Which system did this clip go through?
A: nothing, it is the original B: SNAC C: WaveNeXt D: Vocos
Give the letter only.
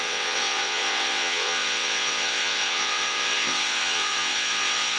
C